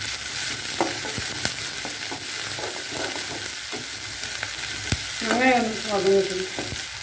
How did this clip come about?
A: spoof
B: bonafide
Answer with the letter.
B